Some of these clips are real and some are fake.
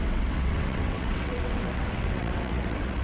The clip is fake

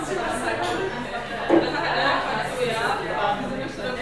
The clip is real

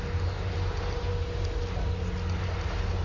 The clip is real